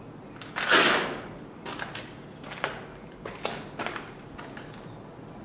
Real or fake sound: real